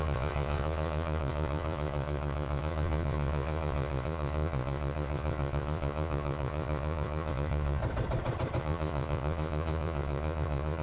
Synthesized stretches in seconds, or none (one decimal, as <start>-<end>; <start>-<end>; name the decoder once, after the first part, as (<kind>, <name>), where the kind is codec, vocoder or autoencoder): 0.0-7.8 (vocoder, Vocos); 8.6-10.8